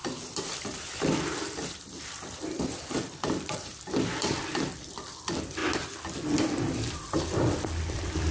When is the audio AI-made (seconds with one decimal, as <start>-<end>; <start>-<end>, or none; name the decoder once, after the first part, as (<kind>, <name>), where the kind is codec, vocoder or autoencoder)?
0.0-5.6 (vocoder, BigVGAN v2); 6.6-8.3